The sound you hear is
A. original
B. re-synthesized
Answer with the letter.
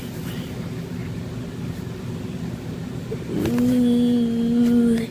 A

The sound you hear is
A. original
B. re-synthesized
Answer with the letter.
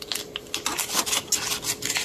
A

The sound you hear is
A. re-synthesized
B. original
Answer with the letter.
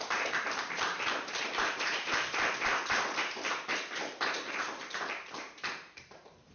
A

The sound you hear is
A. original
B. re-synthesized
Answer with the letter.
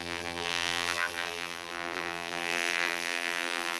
B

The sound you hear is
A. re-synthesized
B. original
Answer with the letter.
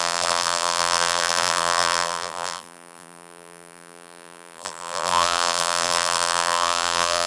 A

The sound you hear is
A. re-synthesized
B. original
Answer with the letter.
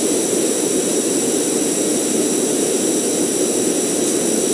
A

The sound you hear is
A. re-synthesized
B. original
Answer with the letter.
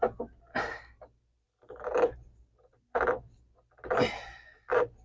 B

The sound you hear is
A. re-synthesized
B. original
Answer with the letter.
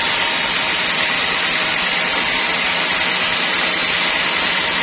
B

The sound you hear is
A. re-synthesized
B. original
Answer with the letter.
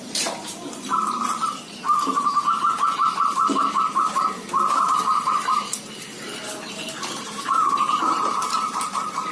A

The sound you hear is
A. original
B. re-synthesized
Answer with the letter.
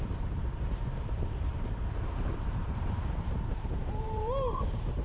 B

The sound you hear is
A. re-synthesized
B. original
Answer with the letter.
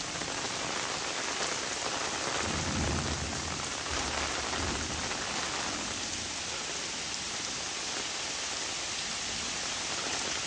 B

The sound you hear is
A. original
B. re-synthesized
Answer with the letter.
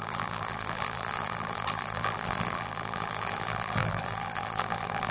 B